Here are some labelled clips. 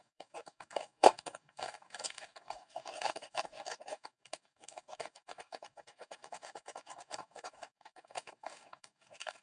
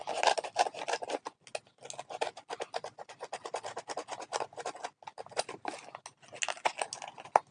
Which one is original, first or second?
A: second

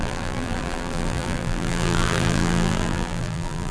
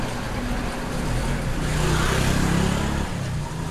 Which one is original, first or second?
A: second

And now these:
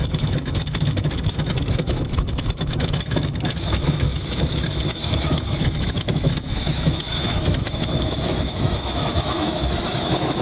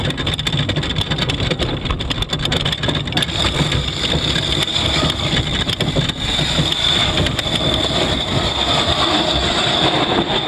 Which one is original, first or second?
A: second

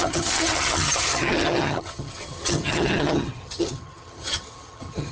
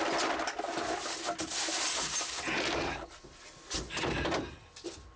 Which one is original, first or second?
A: second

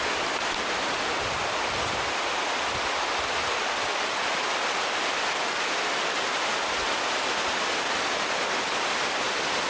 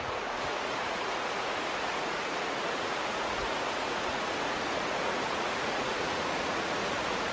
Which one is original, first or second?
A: first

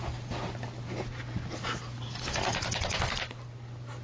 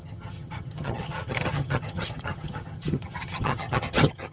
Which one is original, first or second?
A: first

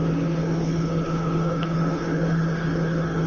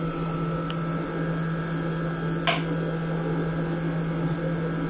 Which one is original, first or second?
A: second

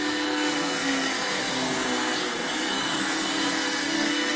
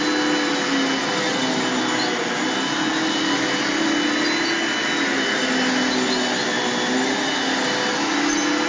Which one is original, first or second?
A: second